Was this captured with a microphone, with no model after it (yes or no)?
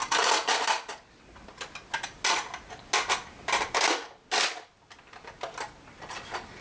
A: yes